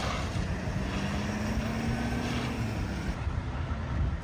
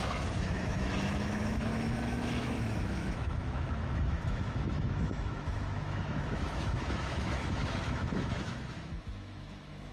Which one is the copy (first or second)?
second